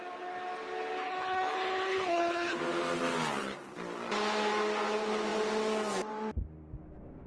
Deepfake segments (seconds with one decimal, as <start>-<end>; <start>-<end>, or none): 1.0-2.6